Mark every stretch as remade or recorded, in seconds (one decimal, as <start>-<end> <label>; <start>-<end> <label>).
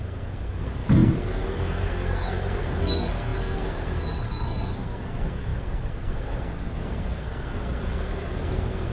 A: 0.0-8.9 remade